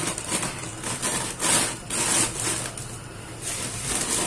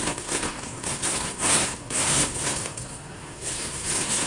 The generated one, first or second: second